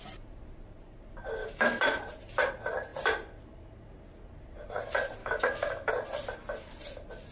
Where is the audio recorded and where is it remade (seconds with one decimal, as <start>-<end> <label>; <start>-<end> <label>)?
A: 0.0-1.4 recorded; 1.4-2.0 remade; 2.0-5.2 recorded; 5.2-5.9 remade; 5.9-7.3 recorded